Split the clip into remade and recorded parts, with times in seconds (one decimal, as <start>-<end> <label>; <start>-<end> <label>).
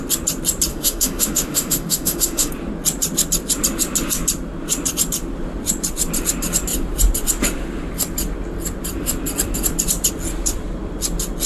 0.0-0.7 recorded; 0.7-2.5 remade; 2.5-11.5 recorded